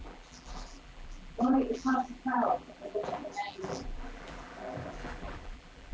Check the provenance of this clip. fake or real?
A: fake